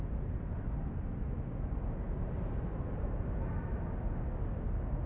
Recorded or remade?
recorded